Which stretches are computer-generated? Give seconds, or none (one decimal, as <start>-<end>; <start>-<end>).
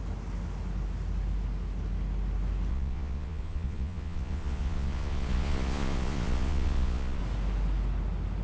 2.7-7.2